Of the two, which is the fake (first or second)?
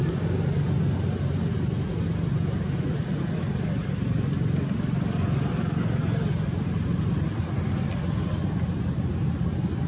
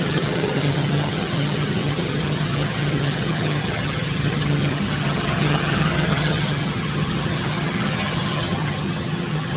second